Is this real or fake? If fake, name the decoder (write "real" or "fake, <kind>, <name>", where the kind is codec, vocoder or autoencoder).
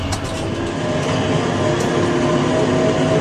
real